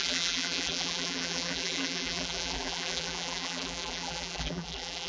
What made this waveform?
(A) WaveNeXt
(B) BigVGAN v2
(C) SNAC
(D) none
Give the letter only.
B